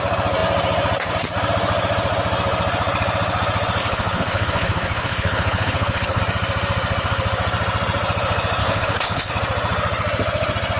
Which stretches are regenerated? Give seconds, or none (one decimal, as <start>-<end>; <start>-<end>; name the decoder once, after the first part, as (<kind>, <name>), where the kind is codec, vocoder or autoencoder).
3.8-6.2 (codec, HILCodec); 8.6-9.3